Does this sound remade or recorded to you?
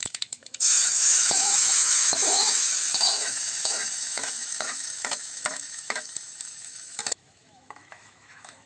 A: remade